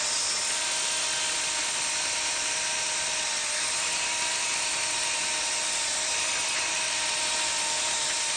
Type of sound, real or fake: real